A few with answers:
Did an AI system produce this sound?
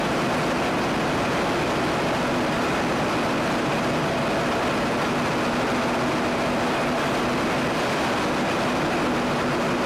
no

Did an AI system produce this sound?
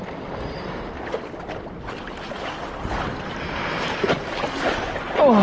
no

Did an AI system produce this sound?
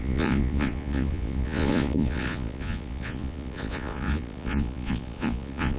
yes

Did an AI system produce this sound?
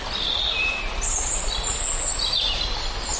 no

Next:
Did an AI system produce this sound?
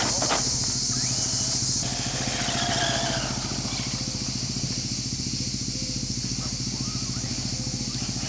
no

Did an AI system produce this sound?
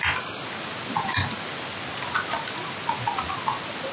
no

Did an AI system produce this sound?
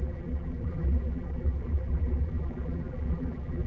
yes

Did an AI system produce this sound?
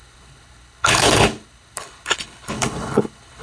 yes